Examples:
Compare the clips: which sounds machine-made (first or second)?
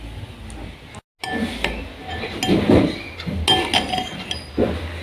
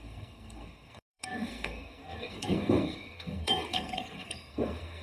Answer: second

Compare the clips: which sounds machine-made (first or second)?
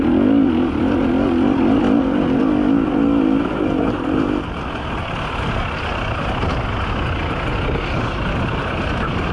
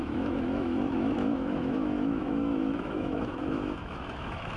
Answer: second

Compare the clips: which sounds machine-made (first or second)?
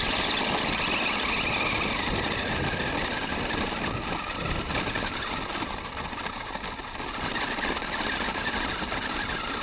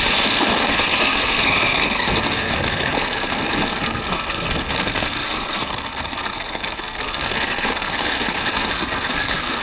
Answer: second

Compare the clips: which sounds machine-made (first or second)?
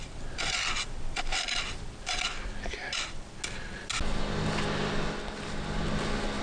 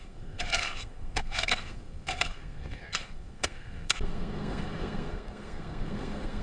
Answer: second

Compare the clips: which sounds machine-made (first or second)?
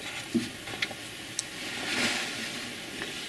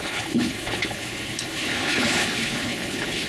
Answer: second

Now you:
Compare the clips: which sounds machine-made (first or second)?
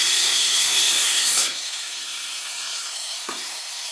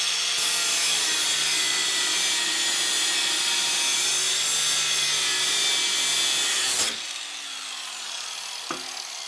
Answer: first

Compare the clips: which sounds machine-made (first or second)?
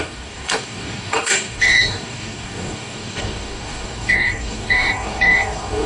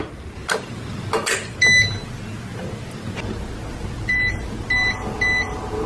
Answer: first